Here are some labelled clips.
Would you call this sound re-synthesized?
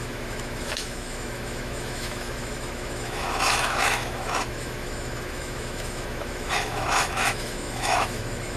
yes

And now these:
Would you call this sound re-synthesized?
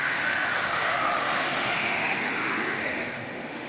yes